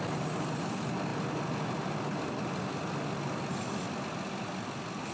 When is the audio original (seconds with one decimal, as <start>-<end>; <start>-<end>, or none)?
0.0-5.1